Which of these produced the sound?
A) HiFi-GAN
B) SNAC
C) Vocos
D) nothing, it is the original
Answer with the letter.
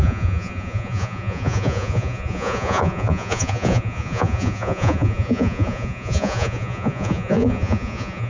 C